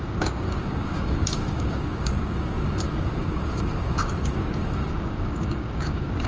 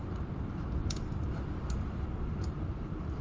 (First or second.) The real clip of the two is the second